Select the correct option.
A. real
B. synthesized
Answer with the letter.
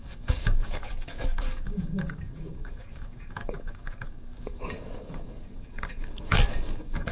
B